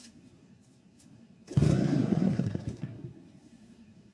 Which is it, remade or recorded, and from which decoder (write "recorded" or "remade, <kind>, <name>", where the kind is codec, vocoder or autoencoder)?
remade, codec, SNAC